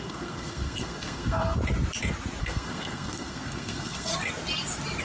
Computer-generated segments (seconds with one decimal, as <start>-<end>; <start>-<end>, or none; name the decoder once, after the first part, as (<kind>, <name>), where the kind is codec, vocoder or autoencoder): 0.0-1.6 (codec, SNAC); 2.4-4.1